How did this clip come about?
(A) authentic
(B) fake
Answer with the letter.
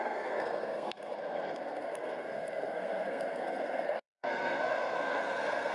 B